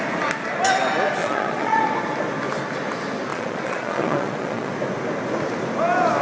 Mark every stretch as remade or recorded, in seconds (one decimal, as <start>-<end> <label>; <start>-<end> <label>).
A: 0.0-1.2 recorded; 1.2-1.8 remade; 1.8-3.3 recorded; 3.3-4.7 remade; 4.7-6.2 recorded